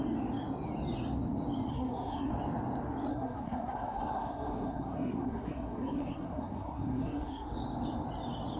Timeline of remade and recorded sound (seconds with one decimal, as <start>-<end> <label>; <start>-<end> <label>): 0.0-1.7 recorded; 1.7-2.3 remade; 2.3-3.1 recorded; 3.1-7.5 remade; 7.5-8.6 recorded